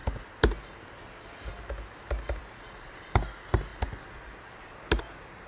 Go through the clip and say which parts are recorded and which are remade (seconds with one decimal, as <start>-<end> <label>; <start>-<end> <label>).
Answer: 0.0-5.5 recorded